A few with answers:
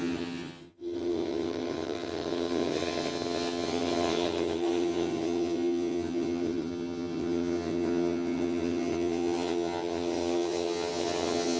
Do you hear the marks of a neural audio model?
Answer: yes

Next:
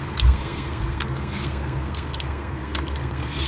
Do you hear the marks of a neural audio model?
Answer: yes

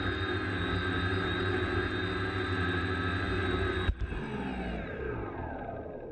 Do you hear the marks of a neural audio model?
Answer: no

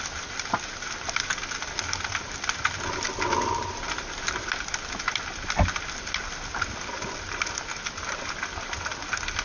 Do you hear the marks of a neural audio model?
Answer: no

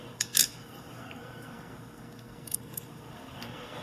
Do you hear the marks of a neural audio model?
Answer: yes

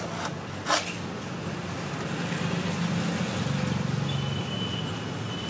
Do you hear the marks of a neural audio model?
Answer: no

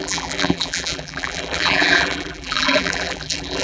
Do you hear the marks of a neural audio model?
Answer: yes